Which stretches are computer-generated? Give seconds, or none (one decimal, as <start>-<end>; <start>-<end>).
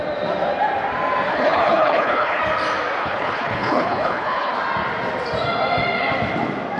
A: 1.3-2.4; 3.0-4.5